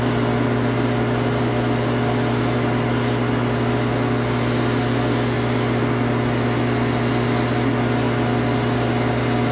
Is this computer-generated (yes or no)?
no